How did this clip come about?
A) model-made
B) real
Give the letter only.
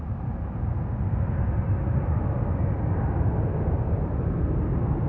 B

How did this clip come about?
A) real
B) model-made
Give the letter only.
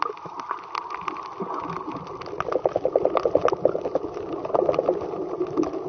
A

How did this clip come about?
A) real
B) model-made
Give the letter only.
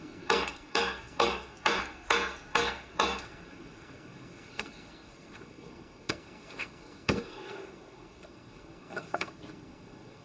B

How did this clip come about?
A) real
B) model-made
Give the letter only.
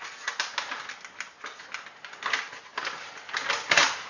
A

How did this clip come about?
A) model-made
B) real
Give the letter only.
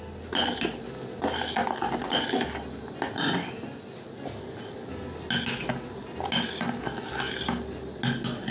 B